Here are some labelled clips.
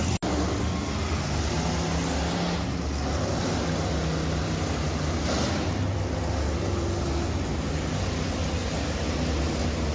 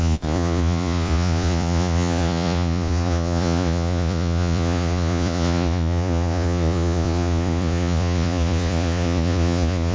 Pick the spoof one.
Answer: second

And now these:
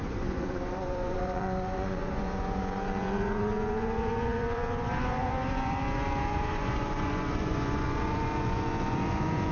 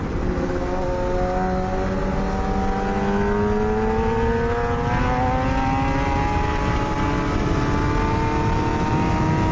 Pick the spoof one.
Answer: first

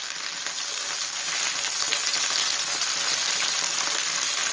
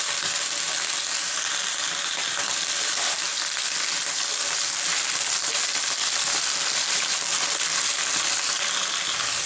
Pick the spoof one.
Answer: second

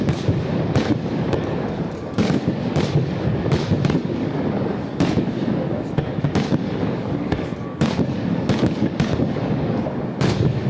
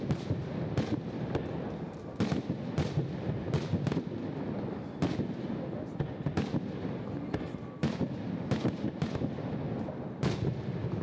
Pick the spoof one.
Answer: first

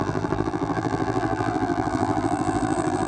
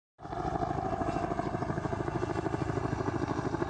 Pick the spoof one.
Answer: first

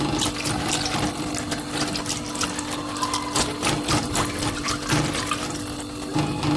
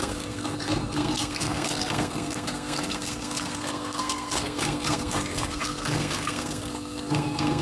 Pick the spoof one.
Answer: second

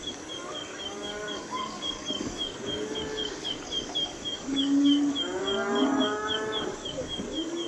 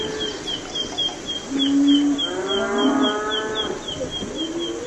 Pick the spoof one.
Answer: first